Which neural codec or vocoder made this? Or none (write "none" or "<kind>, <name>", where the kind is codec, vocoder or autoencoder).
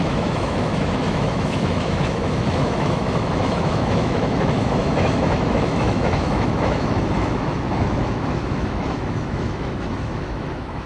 autoencoder, DAC-VAE